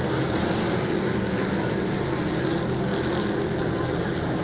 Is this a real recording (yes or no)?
yes